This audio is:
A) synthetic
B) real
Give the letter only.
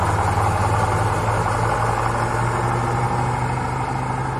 B